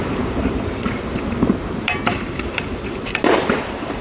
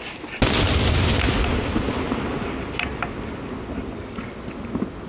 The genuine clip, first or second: second